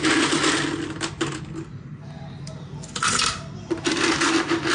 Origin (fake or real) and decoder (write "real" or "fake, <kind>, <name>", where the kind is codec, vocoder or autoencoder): real